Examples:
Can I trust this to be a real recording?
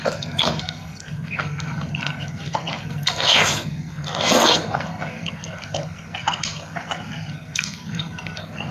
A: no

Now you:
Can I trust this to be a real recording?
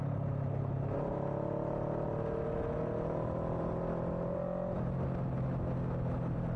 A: yes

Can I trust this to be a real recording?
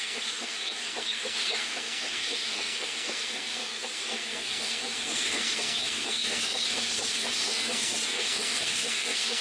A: no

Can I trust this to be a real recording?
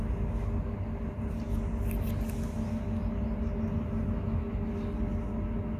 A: yes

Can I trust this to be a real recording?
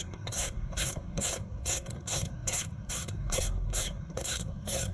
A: no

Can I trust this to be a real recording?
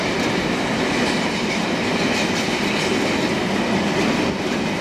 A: yes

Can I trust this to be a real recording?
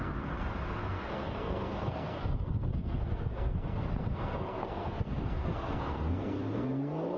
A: no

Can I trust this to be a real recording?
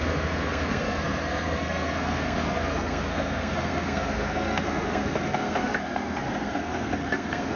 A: no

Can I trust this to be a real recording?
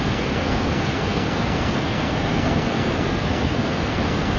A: no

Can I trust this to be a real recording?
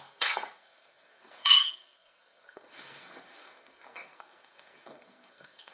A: no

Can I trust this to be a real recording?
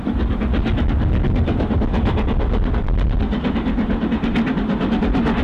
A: yes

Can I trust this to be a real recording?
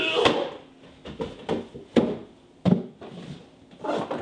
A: yes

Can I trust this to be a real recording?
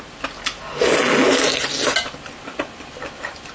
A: yes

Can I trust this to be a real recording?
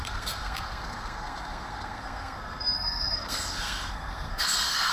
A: no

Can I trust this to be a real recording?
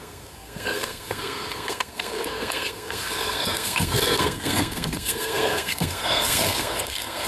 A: no